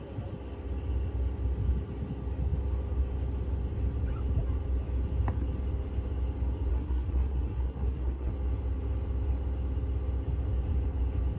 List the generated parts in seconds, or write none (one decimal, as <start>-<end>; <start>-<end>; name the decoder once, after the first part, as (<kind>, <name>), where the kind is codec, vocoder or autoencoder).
6.7-8.3 (codec, SNAC)

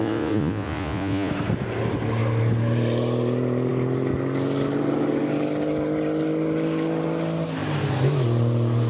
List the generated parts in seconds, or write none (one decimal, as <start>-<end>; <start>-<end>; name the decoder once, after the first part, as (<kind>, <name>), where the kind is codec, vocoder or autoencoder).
0.0-1.3 (vocoder, Vocos)

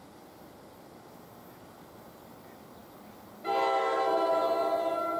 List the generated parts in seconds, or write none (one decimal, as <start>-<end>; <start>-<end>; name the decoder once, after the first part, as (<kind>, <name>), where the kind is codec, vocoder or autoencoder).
none

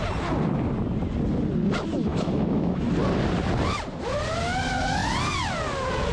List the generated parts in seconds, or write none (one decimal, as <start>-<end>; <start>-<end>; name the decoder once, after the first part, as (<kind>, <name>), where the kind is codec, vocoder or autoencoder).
2.1-2.9 (autoencoder, DAC-VAE)

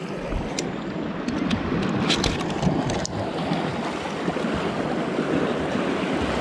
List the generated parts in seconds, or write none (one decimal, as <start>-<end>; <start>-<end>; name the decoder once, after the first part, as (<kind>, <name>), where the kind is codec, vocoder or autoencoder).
none

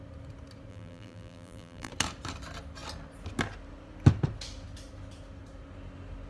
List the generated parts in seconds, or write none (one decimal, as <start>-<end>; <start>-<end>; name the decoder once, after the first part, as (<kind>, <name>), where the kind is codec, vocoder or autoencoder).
0.7-1.9 (vocoder, BigVGAN v2)

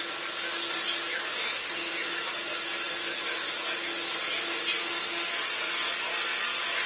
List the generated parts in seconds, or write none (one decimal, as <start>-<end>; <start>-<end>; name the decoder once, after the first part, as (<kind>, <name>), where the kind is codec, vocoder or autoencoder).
1.1-1.9 (autoencoder, DAC-VAE)